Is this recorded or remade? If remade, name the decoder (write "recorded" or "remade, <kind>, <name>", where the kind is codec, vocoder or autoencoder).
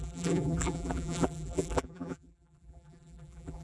remade, vocoder, BigVGAN v2